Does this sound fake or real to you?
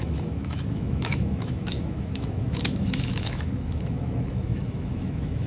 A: fake